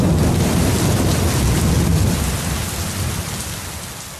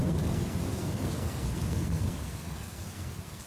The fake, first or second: second